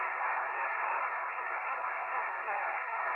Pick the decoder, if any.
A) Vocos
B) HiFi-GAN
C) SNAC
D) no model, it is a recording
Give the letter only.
C